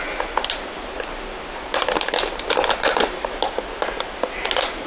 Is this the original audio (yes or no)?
yes